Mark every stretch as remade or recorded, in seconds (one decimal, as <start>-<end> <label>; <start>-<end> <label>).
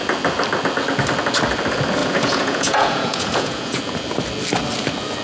0.0-2.0 recorded; 2.0-3.8 remade; 3.8-5.2 recorded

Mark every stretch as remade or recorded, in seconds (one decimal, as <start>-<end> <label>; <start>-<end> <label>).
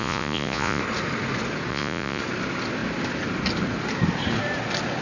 0.0-0.8 remade; 0.8-1.7 recorded; 1.7-2.2 remade; 2.2-5.0 recorded